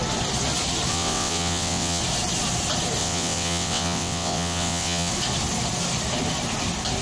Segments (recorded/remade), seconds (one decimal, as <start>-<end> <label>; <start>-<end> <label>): 0.0-0.9 recorded; 0.9-2.0 remade; 2.0-3.0 recorded; 3.0-5.1 remade; 5.1-7.0 recorded